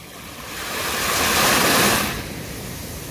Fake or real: real